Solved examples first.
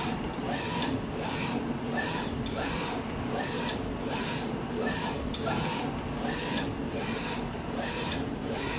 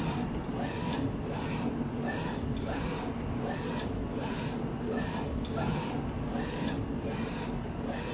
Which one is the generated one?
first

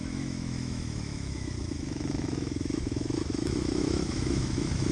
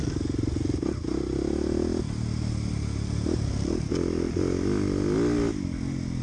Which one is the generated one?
first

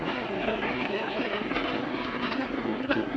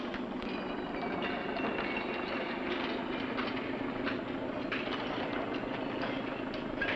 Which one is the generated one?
first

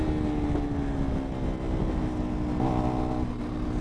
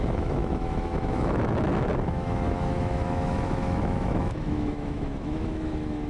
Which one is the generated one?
second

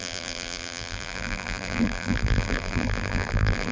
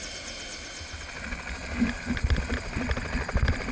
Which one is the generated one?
first